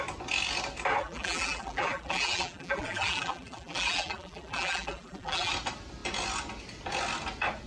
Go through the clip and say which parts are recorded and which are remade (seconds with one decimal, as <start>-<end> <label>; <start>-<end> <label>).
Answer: 0.0-1.0 recorded; 1.0-5.5 remade; 5.5-7.7 recorded